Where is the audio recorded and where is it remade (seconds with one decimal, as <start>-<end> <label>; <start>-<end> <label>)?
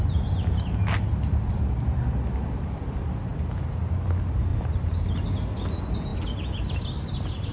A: 0.0-4.5 recorded; 4.5-5.2 remade; 5.2-7.5 recorded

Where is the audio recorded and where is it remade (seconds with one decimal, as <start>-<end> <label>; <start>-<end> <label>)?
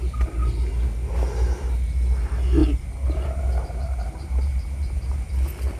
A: 0.0-2.6 recorded; 2.6-5.3 remade; 5.3-5.8 recorded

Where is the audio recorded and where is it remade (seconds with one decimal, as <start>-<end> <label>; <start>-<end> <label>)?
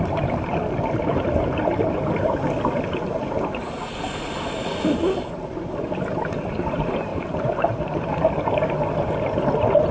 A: 0.0-7.1 recorded; 7.1-8.5 remade; 8.5-9.9 recorded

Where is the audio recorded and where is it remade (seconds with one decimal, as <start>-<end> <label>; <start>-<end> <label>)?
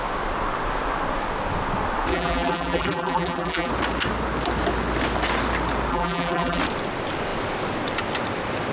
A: 0.0-2.1 recorded; 2.1-3.7 remade; 3.7-5.9 recorded; 5.9-6.6 remade; 6.6-8.7 recorded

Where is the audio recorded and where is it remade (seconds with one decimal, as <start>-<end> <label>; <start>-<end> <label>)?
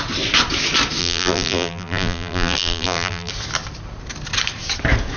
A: 0.0-1.0 recorded; 1.0-3.3 remade; 3.3-5.2 recorded